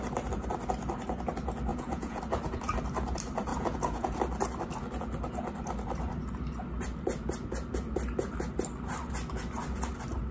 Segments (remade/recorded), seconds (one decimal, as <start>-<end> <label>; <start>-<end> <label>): 0.0-1.7 recorded; 1.7-2.2 remade; 2.2-3.5 recorded; 3.5-4.2 remade; 4.2-10.3 recorded

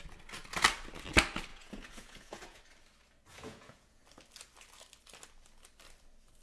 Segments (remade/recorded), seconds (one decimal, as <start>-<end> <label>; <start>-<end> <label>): 0.0-1.5 recorded; 1.5-2.6 remade; 2.6-3.3 recorded; 3.3-4.0 remade; 4.0-6.4 recorded

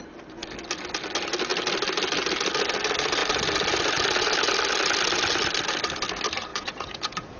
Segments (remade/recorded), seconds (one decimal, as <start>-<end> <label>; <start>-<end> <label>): 0.0-6.5 recorded; 6.5-7.4 remade